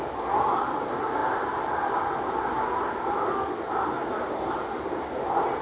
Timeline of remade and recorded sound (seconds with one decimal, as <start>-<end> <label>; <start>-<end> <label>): 0.0-1.2 recorded; 1.2-4.6 remade; 4.6-5.6 recorded